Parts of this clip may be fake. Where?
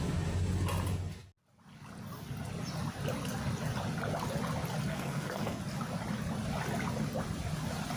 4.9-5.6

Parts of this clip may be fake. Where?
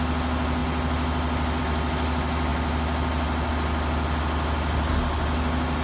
none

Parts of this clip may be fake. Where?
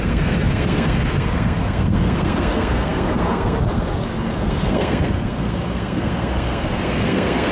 0.0-7.5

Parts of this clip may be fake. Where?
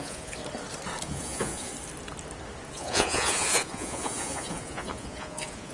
0.0-0.4; 1.0-1.7; 2.7-5.7